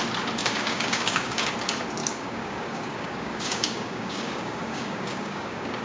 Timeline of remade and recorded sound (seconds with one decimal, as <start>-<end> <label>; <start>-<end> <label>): 0.0-0.4 recorded; 0.4-1.5 remade; 1.5-2.0 recorded; 2.0-5.8 remade